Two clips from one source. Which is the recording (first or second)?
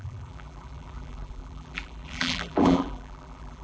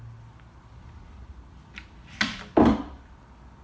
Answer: second